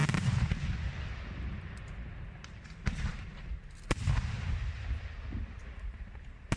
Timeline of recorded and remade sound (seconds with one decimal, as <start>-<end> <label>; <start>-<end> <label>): 0.0-6.6 recorded